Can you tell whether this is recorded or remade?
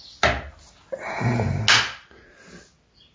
recorded